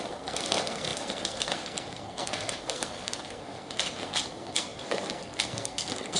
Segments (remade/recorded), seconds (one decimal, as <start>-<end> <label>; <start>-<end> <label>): 0.0-6.2 remade